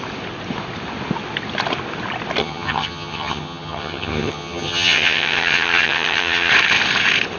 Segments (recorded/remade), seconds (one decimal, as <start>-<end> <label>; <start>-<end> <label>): 0.0-2.4 recorded; 2.4-6.5 remade; 6.5-7.4 recorded